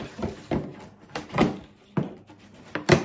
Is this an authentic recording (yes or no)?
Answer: yes